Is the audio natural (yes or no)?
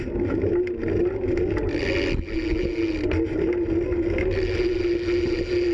yes